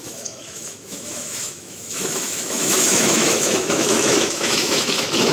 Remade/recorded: remade